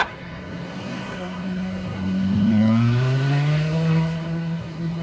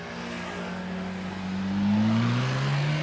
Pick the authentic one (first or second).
second